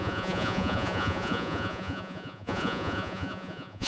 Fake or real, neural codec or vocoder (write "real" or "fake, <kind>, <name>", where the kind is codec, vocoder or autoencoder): fake, vocoder, Vocos